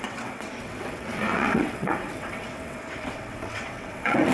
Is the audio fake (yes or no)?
yes